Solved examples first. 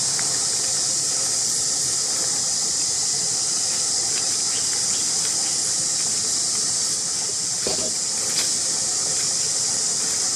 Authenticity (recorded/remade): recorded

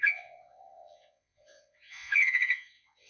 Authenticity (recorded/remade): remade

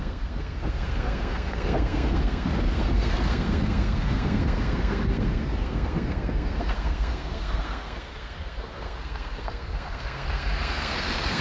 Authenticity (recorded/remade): remade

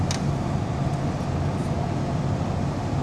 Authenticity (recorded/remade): recorded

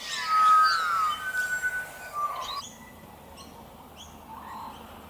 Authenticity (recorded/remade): recorded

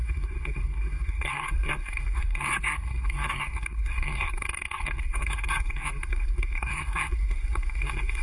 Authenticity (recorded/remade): remade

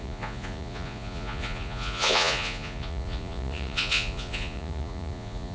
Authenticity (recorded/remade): remade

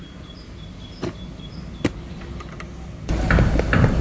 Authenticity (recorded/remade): recorded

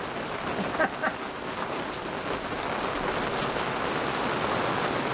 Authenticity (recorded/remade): recorded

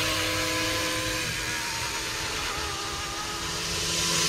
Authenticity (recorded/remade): recorded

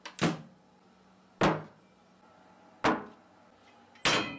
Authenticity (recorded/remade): recorded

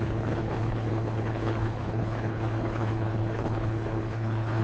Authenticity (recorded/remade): remade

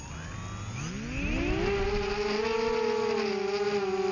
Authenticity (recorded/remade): recorded